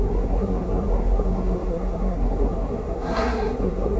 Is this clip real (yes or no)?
no